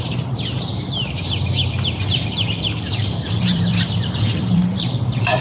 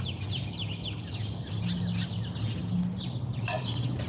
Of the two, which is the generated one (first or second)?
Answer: first